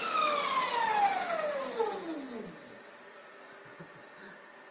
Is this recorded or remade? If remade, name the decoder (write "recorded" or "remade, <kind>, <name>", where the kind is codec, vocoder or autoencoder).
recorded